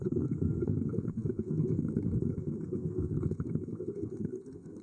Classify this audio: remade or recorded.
remade